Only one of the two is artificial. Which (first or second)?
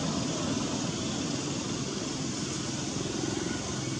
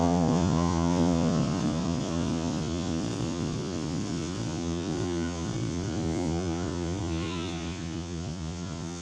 second